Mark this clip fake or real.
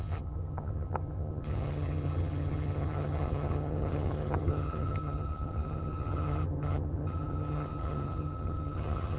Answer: fake